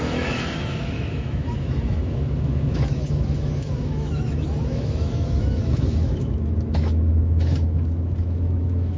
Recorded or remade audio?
remade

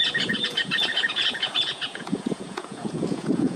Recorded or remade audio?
remade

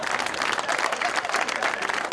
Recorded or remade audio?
recorded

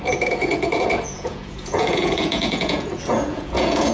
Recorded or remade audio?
remade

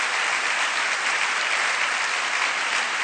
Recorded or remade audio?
recorded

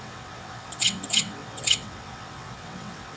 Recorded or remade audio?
remade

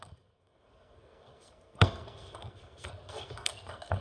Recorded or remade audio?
remade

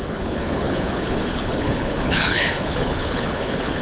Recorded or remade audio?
remade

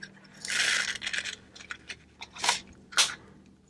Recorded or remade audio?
recorded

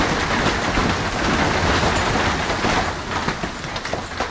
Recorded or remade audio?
recorded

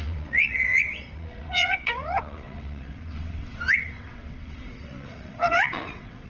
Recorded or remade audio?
remade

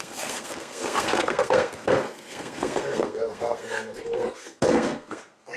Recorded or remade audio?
remade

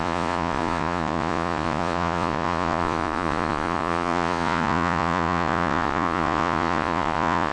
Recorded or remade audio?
remade